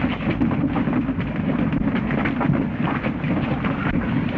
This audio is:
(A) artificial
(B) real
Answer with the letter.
B